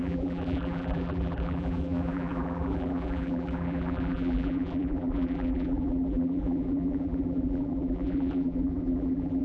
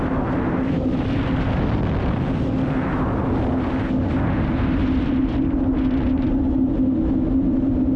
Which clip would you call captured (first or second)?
second